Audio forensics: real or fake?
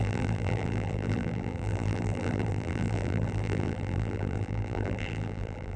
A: fake